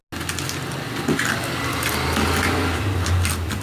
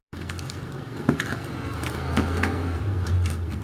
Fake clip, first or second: second